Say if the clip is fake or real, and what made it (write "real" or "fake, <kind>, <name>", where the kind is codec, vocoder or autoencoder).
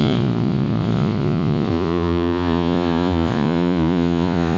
fake, vocoder, Vocos